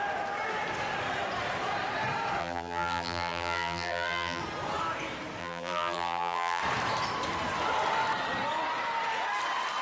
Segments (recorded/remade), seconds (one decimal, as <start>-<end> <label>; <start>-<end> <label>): 0.0-2.4 recorded; 2.4-4.4 remade; 4.4-5.4 recorded; 5.4-6.6 remade; 6.6-9.8 recorded